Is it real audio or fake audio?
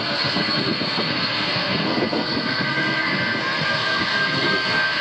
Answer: fake